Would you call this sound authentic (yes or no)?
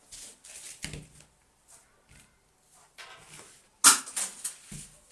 yes